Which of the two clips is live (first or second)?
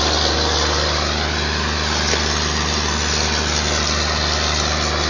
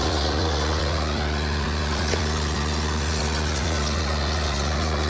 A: first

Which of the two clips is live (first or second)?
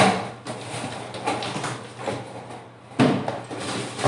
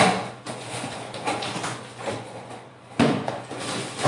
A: first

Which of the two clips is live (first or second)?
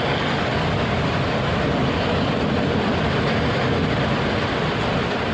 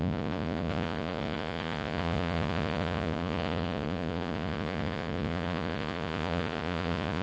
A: first